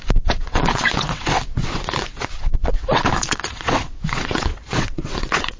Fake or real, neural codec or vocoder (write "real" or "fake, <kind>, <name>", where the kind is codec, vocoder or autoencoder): fake, vocoder, WaveNeXt